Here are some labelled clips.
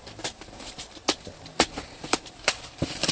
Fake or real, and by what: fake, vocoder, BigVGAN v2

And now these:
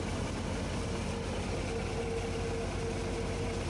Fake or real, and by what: real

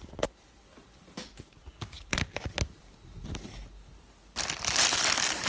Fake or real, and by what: real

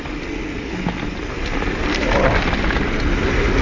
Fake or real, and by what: real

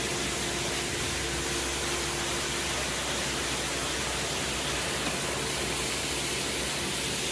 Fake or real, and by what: real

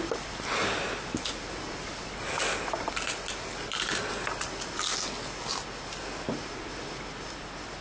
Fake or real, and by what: real